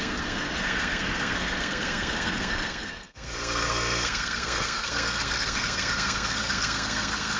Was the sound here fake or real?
fake